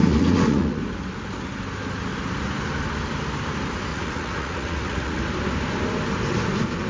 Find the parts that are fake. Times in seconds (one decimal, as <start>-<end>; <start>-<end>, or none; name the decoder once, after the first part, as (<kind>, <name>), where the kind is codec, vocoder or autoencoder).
0.0-0.8 (vocoder, Vocos); 3.9-5.2